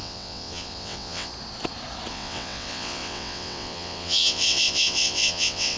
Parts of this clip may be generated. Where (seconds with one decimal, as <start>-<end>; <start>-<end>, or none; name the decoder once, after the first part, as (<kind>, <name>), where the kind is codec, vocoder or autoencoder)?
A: 0.0-1.3 (vocoder, WaveNeXt); 2.1-5.8